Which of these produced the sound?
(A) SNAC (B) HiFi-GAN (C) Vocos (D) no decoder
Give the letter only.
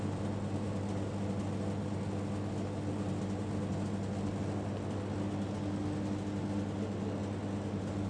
D